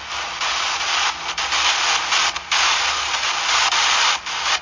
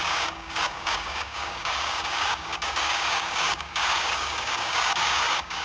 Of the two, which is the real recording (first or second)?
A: first